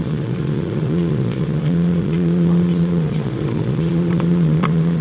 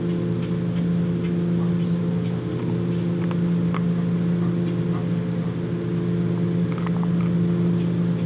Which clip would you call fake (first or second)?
first